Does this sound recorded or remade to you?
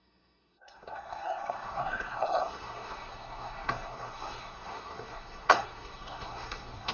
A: remade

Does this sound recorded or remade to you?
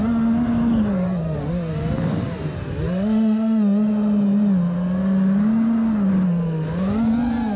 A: recorded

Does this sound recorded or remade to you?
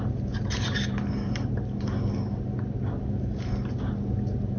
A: recorded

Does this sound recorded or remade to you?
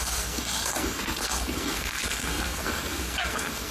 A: remade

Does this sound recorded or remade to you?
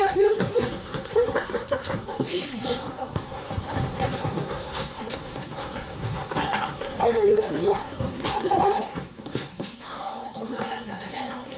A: remade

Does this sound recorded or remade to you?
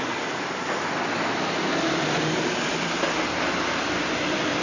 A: recorded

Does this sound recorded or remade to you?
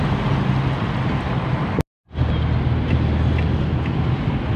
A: recorded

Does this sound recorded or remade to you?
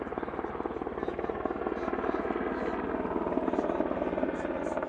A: recorded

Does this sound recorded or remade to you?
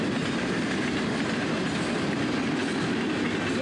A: recorded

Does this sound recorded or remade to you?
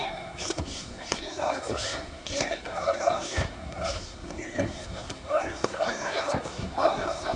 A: remade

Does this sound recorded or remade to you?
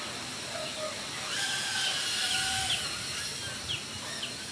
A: recorded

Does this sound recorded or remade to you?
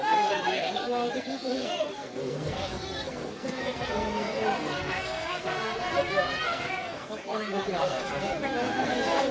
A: remade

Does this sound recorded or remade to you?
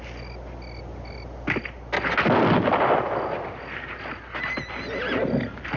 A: recorded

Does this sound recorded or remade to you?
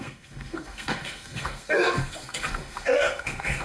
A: remade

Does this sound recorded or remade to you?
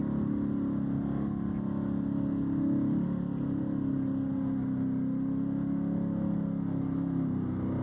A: recorded